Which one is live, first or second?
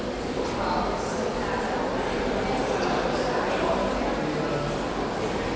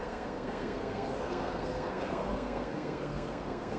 first